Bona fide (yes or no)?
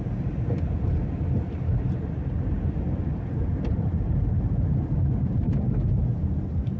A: yes